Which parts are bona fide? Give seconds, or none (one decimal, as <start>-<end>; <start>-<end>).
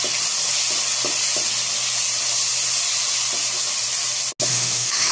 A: 0.0-4.5